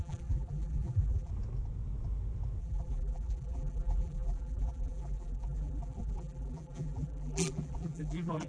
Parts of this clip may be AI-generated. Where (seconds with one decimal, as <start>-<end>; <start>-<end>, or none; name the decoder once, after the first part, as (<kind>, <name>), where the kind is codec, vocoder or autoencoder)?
0.0-1.3 (vocoder, BigVGAN v2); 2.6-8.5